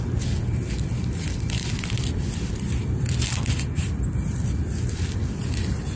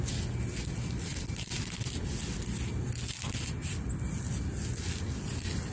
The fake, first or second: first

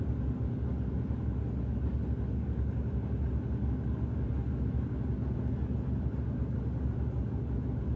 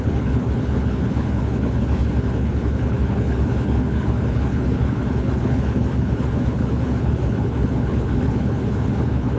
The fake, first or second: second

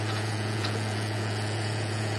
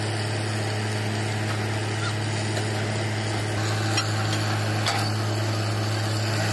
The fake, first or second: first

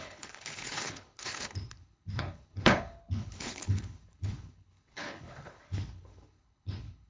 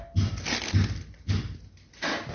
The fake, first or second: first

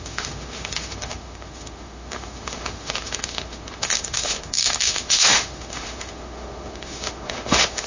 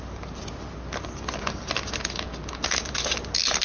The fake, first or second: first